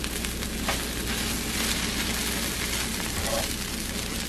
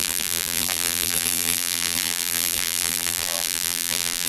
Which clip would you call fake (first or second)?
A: second